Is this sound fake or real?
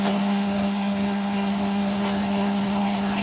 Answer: fake